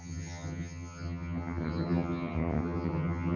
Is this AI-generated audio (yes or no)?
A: yes